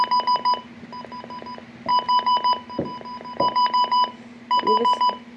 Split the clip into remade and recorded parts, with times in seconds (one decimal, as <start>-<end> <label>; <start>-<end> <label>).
0.0-1.9 recorded; 1.9-4.3 remade; 4.3-5.4 recorded